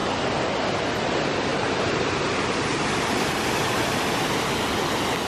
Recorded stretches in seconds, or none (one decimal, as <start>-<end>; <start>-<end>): 0.0-5.3